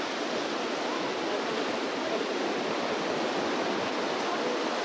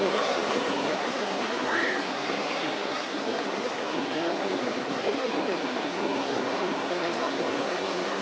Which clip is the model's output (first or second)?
second